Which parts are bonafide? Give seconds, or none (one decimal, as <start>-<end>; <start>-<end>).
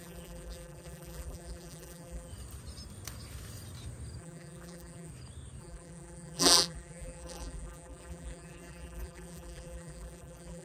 2.3-4.2; 5.1-5.6